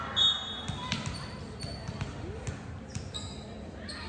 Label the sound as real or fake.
real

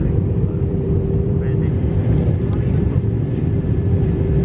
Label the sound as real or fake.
fake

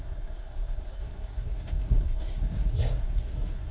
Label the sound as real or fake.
fake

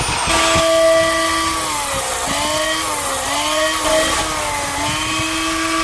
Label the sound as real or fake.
real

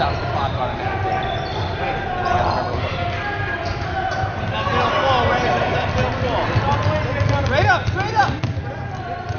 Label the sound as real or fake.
real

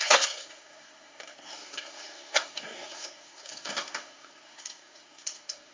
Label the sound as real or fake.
fake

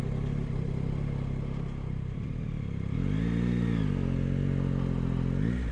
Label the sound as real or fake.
real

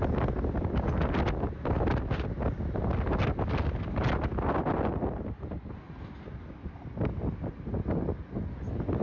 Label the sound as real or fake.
real